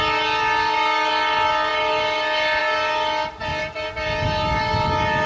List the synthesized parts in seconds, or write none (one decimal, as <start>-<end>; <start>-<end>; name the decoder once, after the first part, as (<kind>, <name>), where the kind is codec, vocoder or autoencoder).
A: none